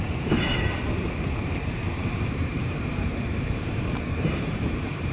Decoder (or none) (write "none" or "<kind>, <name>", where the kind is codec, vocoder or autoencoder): vocoder, BigVGAN v2